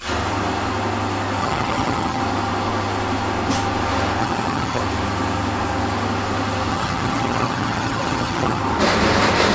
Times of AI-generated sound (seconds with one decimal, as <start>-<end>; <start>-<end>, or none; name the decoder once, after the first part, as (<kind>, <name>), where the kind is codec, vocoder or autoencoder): 1.4-2.2 (vocoder, HiFi-GAN); 4.2-4.8; 6.7-8.6